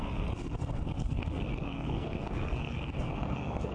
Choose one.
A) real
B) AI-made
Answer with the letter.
B